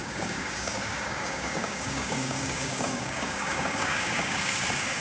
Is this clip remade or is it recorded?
remade